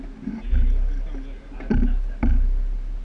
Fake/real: real